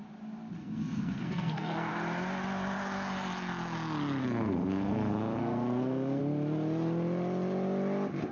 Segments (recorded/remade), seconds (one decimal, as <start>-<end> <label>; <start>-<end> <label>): 0.0-0.6 recorded; 0.6-1.9 remade; 1.9-4.2 recorded; 4.2-6.2 remade; 6.2-8.3 recorded